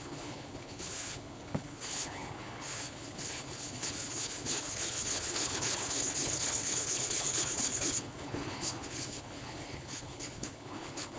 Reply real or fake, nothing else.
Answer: fake